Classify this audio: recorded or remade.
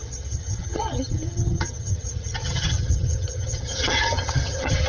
remade